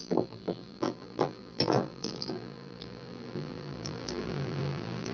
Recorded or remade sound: remade